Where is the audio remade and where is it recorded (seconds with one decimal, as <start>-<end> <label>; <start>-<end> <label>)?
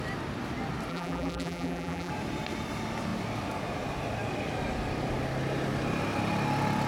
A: 0.0-0.9 recorded; 0.9-2.1 remade; 2.1-6.9 recorded